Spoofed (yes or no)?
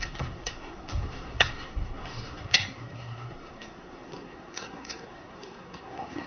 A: yes